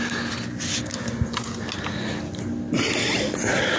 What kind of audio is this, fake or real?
real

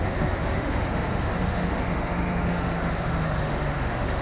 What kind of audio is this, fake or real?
fake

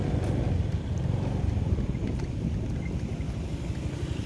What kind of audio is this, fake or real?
real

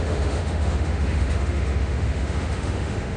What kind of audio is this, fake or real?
fake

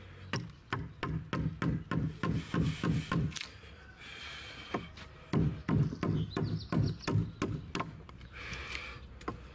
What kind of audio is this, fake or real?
real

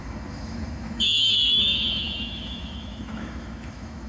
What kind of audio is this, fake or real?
fake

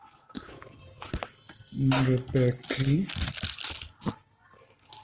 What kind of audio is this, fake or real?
real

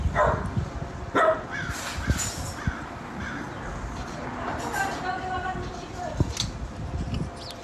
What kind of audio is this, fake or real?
real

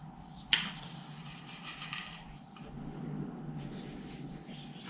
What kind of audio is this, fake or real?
real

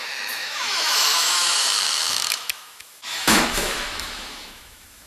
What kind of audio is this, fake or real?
fake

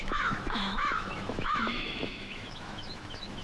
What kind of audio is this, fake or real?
fake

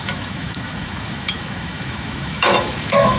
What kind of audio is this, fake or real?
fake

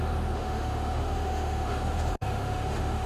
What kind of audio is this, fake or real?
fake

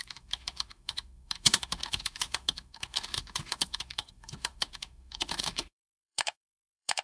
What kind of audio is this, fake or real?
fake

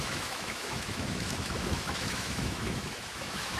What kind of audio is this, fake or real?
fake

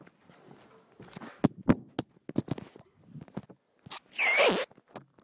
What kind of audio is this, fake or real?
real